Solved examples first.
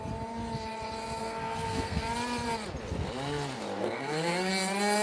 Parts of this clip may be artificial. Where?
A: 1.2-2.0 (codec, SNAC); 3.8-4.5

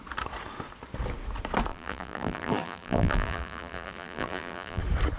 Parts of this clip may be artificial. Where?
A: 1.7-4.8 (vocoder, BigVGAN v2)

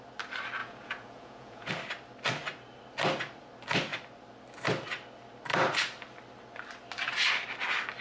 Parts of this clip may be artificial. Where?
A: 0.6-1.7 (vocoder, Vocos)

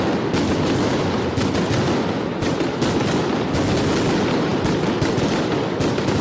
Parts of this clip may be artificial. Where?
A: none

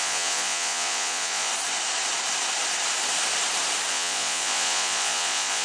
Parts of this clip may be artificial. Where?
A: 0.0-1.5 (vocoder, Vocos); 3.9-5.6

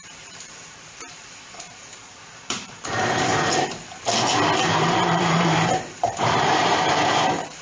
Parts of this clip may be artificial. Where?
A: 0.0-3.3 (vocoder, BigVGAN v2); 4.6-7.6